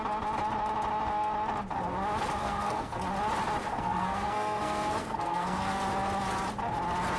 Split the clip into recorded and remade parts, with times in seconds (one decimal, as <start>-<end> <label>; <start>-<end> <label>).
0.0-2.4 recorded; 2.4-3.0 remade; 3.0-3.7 recorded; 3.7-5.8 remade; 5.8-7.2 recorded